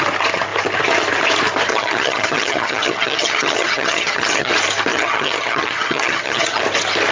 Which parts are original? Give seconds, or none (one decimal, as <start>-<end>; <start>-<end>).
0.0-1.7; 4.5-4.9; 6.6-7.1